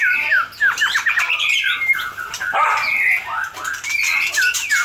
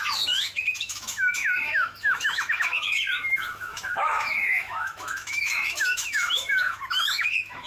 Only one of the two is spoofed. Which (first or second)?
second